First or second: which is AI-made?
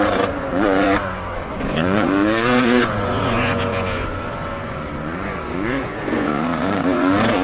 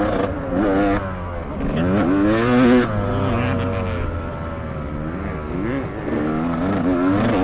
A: first